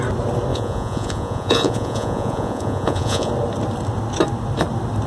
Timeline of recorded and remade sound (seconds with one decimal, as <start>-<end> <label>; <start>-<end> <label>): 0.0-0.5 recorded; 0.5-3.3 remade; 3.3-5.1 recorded